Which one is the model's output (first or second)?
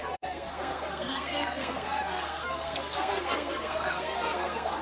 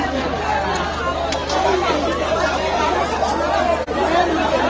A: first